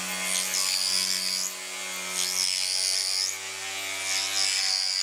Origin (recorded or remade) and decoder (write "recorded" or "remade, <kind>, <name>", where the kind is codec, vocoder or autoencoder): recorded